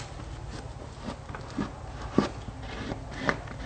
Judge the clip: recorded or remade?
recorded